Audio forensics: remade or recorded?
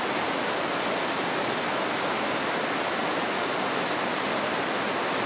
recorded